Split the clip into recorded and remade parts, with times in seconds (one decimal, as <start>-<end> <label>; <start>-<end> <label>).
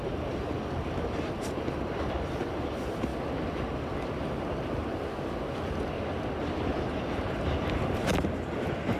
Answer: 0.0-3.1 remade; 3.1-6.8 recorded; 6.8-8.1 remade; 8.1-9.0 recorded